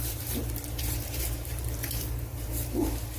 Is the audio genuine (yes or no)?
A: no